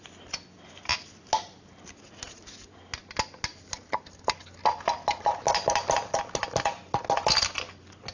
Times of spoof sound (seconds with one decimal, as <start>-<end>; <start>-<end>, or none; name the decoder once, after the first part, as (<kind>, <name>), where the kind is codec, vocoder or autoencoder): none